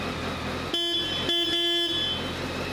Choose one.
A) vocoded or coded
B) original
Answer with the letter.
B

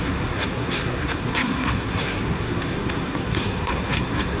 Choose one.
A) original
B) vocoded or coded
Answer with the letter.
B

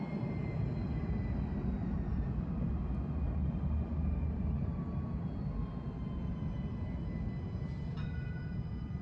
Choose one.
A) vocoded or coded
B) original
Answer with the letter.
B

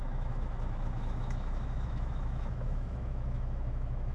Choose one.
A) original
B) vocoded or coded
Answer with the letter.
B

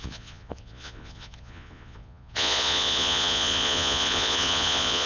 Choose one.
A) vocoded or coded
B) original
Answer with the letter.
A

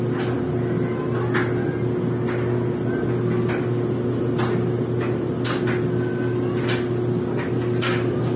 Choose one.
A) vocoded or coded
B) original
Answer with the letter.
B